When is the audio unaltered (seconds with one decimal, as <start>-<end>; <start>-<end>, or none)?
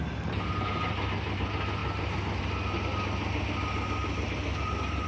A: 0.0-5.1